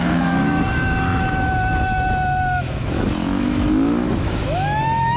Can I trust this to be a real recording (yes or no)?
no